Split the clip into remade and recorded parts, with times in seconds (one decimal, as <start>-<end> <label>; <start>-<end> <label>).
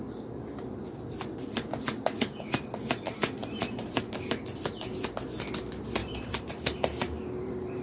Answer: 0.0-3.4 recorded; 3.4-4.6 remade; 4.6-6.0 recorded; 6.0-7.8 remade